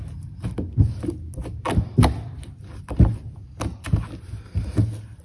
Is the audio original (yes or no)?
yes